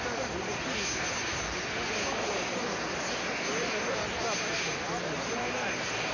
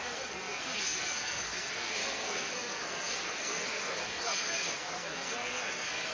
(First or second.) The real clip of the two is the first